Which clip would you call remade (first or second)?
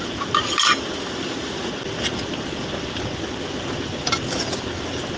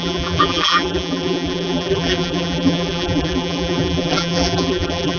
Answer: second